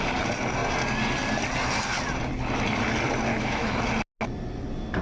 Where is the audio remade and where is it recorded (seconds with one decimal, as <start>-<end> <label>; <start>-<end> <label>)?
0.0-3.3 recorded; 3.3-3.9 remade; 3.9-5.0 recorded